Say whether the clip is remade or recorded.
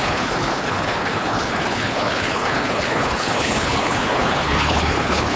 remade